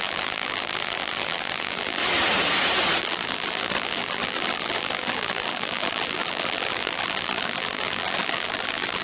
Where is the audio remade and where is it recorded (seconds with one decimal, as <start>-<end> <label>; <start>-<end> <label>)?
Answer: 0.0-2.0 remade; 2.0-3.0 recorded; 3.0-9.0 remade